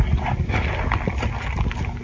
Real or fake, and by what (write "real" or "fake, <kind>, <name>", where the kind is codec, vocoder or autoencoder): real